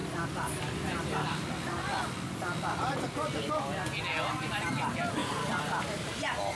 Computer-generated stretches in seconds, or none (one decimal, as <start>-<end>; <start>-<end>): none

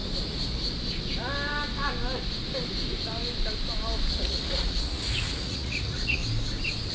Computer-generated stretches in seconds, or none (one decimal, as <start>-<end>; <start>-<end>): 4.1-6.2

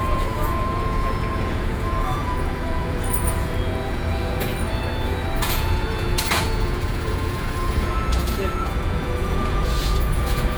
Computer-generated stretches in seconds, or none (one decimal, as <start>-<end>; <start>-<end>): 0.0-4.5; 5.4-10.6

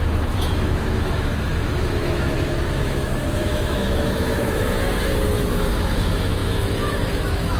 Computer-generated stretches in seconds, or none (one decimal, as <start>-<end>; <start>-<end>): 0.0-7.6